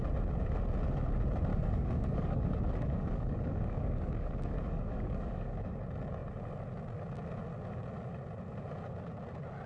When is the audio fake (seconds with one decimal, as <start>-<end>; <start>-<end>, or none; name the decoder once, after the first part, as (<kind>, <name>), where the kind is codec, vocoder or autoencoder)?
1.5-5.8 (codec, DAC)